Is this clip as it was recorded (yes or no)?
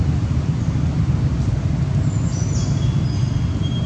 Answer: yes